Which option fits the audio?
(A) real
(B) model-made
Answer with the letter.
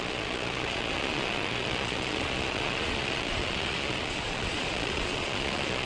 B